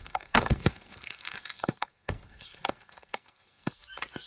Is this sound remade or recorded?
remade